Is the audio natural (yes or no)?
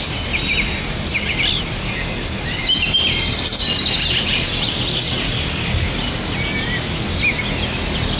yes